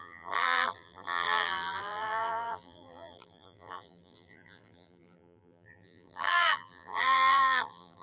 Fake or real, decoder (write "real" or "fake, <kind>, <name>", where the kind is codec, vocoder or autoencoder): fake, vocoder, BigVGAN v2